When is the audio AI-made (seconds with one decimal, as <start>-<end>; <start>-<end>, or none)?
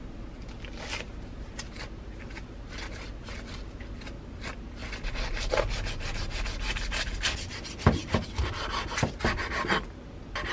none